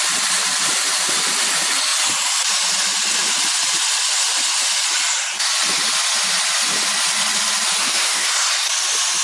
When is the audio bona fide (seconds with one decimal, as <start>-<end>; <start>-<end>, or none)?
0.0-7.8; 8.5-9.2